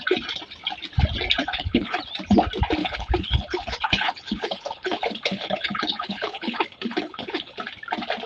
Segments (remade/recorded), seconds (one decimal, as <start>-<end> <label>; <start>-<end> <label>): 0.0-1.4 recorded; 1.4-2.0 remade; 2.0-2.8 recorded; 2.8-7.6 remade; 7.6-8.3 recorded